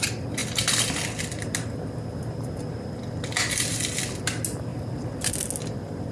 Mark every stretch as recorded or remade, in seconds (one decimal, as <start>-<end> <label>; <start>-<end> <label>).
0.0-4.7 recorded; 4.7-5.3 remade; 5.3-6.1 recorded